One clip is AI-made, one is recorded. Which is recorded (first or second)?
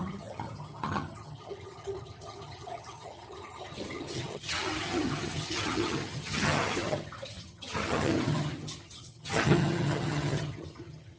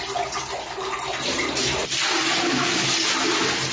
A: second